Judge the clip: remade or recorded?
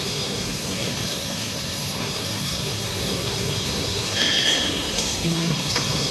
remade